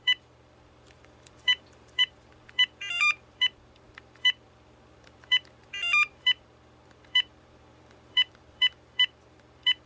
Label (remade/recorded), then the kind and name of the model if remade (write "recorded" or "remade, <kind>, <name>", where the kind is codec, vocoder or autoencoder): remade, vocoder, BigVGAN v2